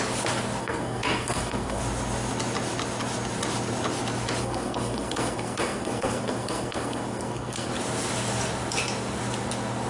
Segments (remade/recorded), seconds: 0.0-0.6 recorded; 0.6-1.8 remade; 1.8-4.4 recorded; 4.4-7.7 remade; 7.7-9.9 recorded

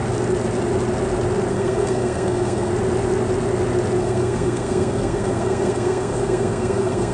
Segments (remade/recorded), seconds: 0.0-1.5 recorded; 1.5-2.7 remade; 2.7-4.0 recorded; 4.0-7.1 remade

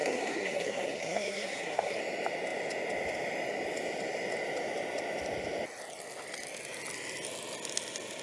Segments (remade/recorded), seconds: 0.0-2.0 remade; 2.0-8.2 recorded

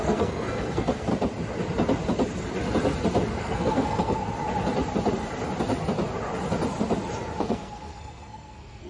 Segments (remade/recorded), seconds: 0.0-1.1 remade; 1.1-3.4 recorded; 3.4-4.2 remade; 4.2-7.4 recorded; 7.4-8.9 remade

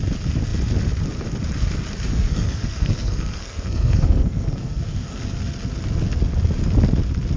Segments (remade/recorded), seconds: 0.0-2.1 recorded; 2.1-5.2 remade; 5.2-7.4 recorded

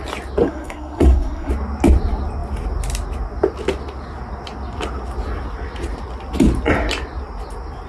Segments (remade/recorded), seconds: 0.0-0.4 recorded; 0.4-1.5 remade; 1.5-7.9 recorded

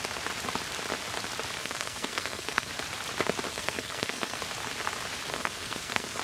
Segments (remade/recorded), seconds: 0.0-1.6 recorded; 1.6-2.7 remade; 2.7-3.5 recorded; 3.5-4.4 remade; 4.4-5.3 recorded; 5.3-6.2 remade